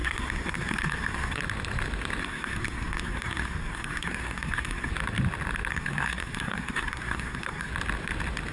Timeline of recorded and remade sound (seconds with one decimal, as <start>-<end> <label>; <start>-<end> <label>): 0.0-1.4 remade; 1.4-2.2 recorded; 2.2-4.9 remade; 4.9-5.7 recorded; 5.7-7.7 remade; 7.7-8.5 recorded